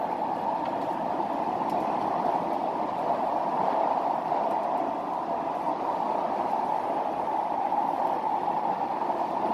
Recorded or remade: recorded